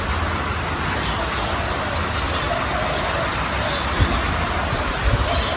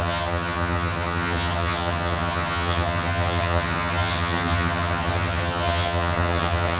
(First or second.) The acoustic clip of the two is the first